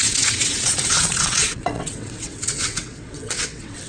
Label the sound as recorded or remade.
remade